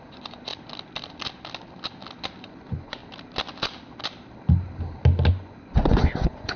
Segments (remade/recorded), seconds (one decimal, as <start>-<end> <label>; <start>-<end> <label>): 0.0-0.5 remade; 0.5-2.4 recorded; 2.4-3.0 remade; 3.0-5.3 recorded; 5.3-6.6 remade